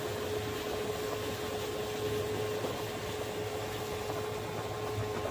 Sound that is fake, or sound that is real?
real